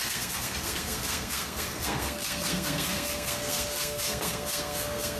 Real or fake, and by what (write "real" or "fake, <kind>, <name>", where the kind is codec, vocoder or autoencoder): fake, codec, SNAC